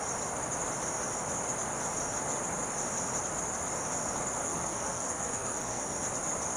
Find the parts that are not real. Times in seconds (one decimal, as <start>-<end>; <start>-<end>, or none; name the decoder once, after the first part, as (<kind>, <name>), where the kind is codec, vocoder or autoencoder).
4.4-5.8 (codec, SNAC)